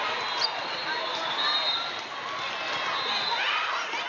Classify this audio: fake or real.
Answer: real